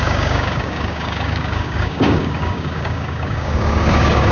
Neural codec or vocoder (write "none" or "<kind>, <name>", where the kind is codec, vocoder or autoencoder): codec, DAC